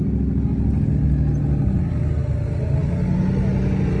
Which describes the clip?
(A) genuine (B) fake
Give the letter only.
A